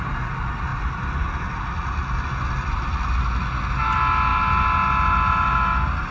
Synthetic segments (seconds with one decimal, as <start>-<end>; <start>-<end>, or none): none